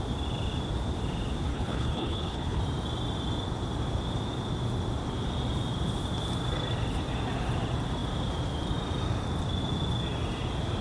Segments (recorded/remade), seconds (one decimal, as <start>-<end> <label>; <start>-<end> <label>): 0.0-1.5 recorded; 1.5-2.6 remade; 2.6-10.8 recorded